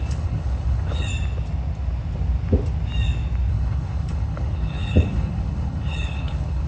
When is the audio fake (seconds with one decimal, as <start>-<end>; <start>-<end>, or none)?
0.0-1.1; 3.5-6.7